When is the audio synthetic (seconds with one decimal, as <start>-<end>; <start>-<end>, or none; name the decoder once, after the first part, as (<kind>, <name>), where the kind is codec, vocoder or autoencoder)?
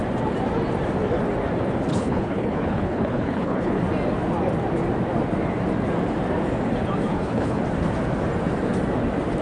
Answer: 1.9-3.8 (codec, HILCodec); 7.1-7.6